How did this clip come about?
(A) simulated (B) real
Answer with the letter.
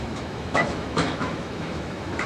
A